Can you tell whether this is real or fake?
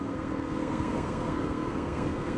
fake